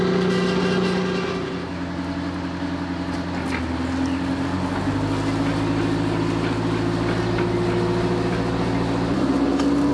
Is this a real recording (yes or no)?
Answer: yes